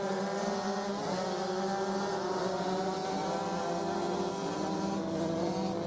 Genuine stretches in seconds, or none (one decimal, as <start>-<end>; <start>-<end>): 0.0-5.9